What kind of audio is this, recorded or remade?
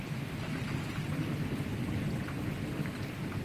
recorded